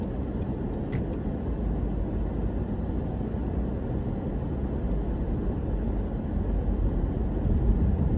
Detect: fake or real real